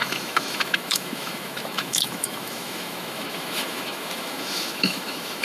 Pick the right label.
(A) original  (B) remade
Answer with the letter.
B